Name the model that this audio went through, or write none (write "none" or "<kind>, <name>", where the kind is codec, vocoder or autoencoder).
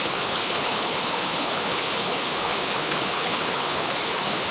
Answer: codec, HILCodec